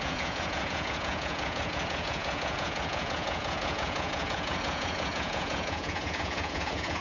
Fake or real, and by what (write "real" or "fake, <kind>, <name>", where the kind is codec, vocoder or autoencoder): fake, vocoder, Vocos